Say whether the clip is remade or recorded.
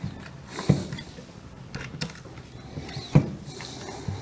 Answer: recorded